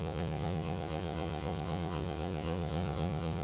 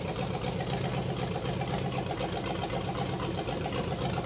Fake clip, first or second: first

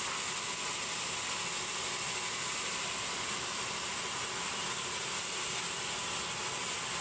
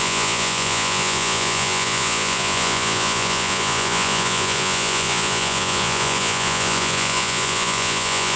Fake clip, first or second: second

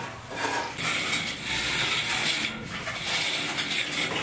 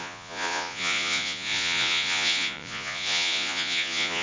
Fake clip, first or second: second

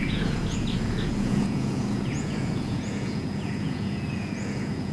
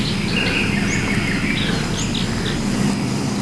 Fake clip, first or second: first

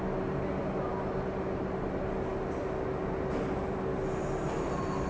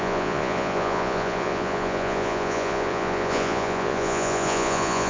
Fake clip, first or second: second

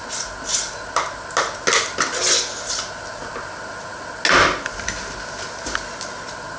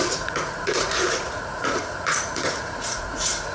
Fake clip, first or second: second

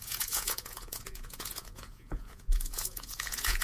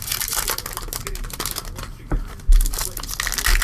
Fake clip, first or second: first